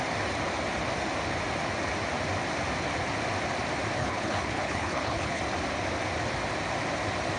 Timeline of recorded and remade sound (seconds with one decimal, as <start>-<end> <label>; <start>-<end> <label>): 0.0-4.0 recorded; 4.0-5.4 remade; 5.4-7.4 recorded